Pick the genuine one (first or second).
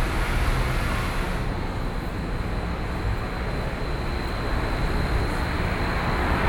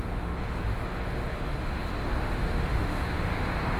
first